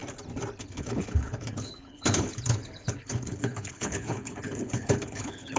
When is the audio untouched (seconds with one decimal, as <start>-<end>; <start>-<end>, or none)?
0.0-0.6